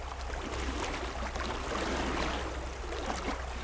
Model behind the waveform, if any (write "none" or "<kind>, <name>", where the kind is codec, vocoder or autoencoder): none